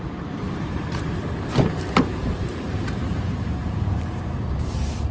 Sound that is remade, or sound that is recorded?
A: remade